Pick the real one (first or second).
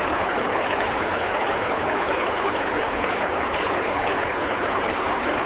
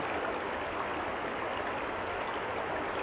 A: second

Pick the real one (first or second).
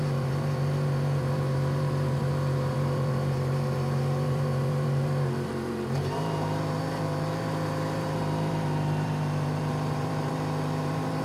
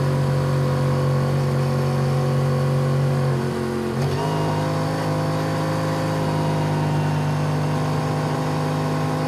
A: second